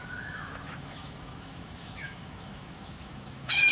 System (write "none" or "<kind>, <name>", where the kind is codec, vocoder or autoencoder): autoencoder, DAC-VAE